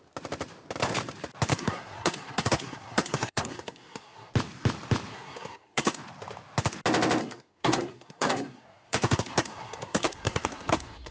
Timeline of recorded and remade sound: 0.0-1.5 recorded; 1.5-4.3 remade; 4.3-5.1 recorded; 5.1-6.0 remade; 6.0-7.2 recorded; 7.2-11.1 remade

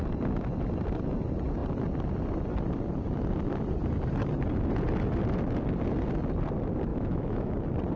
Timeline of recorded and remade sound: 0.0-6.9 recorded; 6.9-7.5 remade; 7.5-8.0 recorded

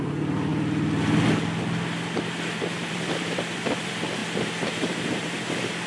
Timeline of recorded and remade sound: 0.0-0.5 remade; 0.5-2.9 recorded; 2.9-4.2 remade; 4.2-4.7 recorded; 4.7-5.9 remade